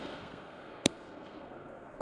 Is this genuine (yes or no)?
no